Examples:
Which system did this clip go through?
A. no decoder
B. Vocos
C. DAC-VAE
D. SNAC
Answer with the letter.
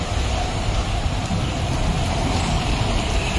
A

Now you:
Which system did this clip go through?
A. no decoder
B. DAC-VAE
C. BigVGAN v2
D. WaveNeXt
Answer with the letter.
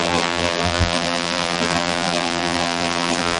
C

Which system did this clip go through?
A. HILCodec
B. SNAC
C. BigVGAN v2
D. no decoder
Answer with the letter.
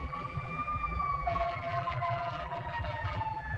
C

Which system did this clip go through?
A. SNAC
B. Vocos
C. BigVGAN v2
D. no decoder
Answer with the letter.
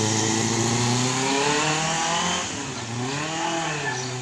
D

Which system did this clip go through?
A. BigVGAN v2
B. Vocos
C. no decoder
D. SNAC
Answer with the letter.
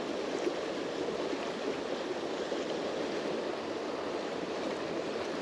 C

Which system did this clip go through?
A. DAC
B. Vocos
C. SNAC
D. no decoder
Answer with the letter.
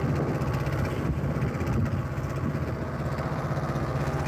D